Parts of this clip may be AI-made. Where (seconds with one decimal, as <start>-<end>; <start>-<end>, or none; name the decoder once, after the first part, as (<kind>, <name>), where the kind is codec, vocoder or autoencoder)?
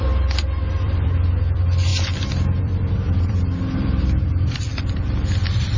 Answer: 0.0-1.9 (vocoder, BigVGAN v2); 2.6-5.8